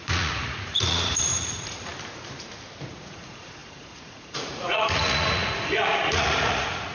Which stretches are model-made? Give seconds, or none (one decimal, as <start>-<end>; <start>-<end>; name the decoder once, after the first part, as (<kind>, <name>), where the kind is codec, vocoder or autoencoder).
0.0-1.9 (vocoder, Vocos); 2.9-6.9